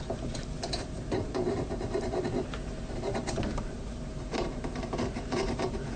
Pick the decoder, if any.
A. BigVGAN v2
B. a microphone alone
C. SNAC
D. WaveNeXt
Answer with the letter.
A